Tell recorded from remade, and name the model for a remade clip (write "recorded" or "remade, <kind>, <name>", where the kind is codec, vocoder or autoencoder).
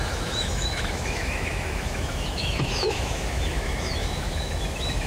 remade, autoencoder, DAC-VAE